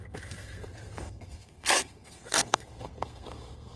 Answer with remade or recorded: remade